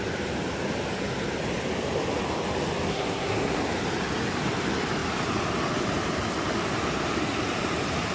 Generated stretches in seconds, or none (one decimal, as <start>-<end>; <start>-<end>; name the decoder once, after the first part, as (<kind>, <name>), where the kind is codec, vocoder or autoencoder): 2.9-3.6 (codec, SNAC)